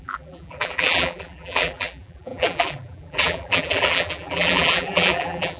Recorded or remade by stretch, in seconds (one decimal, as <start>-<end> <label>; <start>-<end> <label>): 0.0-5.6 remade